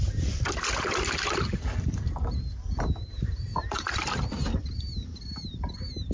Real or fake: fake